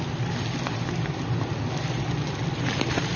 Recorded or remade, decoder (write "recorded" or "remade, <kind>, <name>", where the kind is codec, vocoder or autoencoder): remade, vocoder, BigVGAN v2